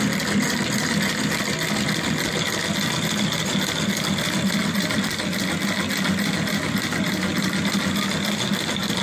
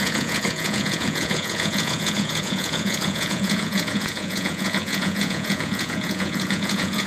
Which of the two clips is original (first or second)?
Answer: first